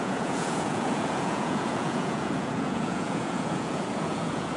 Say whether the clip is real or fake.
fake